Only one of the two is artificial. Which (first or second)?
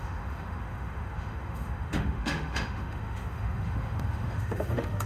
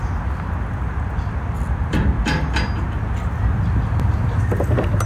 first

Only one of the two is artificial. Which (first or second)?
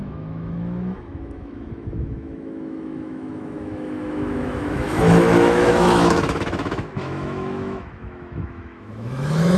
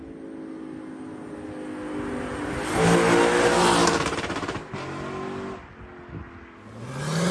first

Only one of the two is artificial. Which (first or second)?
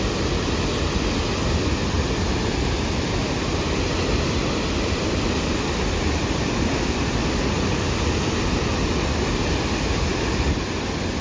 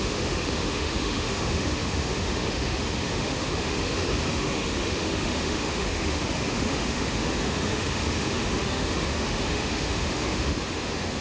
second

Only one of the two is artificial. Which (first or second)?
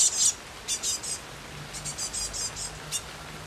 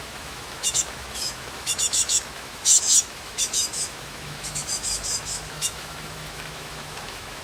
second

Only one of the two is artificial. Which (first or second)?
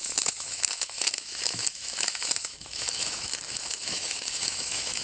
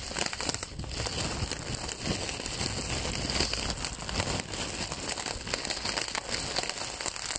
first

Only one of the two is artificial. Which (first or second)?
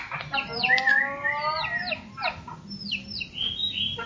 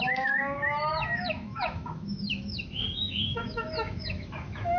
second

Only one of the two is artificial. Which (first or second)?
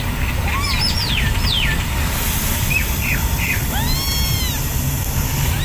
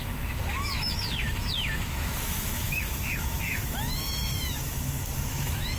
second